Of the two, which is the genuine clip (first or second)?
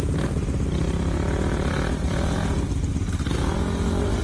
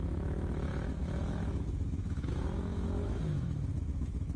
first